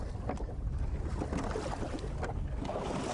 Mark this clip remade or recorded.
recorded